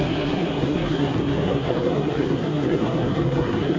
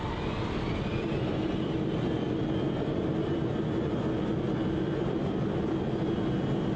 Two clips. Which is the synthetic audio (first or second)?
first